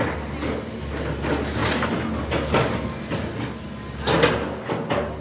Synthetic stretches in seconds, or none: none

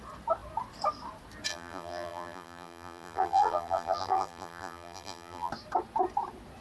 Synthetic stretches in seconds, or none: 1.5-5.5 (vocoder, BigVGAN v2)

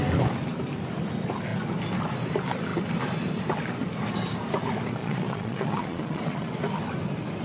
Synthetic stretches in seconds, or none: 5.0-6.5 (vocoder, Vocos)

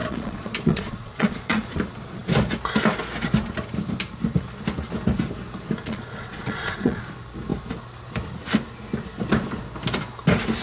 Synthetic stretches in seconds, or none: 0.0-1.8 (vocoder, Vocos); 5.8-7.0

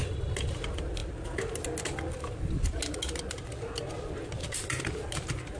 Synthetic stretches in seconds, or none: none

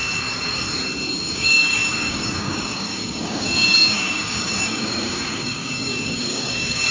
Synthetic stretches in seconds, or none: 1.3-6.9 (codec, DAC)

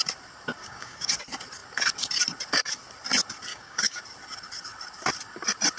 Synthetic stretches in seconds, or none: 0.6-1.1 (codec, DAC); 3.5-4.0

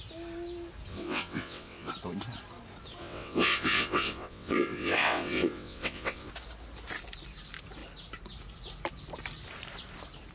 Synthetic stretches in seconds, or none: 0.9-1.9 (vocoder, WaveNeXt); 3.0-6.3